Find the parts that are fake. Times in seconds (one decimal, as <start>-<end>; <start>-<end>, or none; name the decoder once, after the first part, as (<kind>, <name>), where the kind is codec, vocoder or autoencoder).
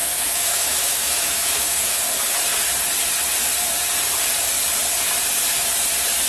0.0-2.0 (autoencoder, DAC-VAE)